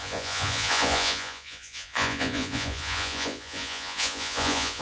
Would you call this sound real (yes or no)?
no